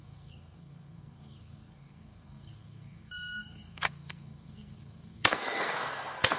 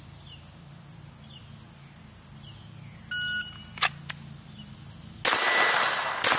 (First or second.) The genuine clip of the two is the second